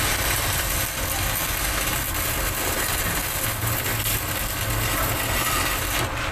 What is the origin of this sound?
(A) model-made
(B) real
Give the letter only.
B